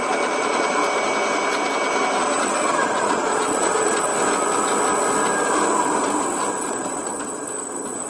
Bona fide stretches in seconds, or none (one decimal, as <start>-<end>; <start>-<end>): 0.8-2.2; 4.1-6.5